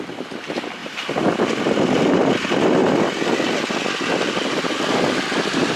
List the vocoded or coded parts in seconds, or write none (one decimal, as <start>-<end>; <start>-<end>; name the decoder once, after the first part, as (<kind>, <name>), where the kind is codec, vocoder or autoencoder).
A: none